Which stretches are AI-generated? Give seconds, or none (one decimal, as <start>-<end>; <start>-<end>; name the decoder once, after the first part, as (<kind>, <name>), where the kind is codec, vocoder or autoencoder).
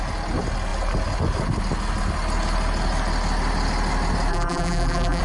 4.3-5.2 (vocoder, BigVGAN v2)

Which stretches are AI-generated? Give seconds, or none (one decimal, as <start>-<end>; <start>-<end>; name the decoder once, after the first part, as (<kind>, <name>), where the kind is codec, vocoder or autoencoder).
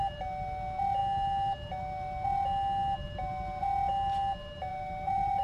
4.7-5.4 (vocoder, BigVGAN v2)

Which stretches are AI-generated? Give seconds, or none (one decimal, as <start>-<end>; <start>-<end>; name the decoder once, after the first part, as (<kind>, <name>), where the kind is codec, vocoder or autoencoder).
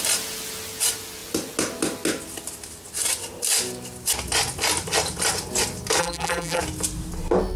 6.0-6.6 (vocoder, BigVGAN v2)